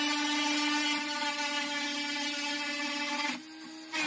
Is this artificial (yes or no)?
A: no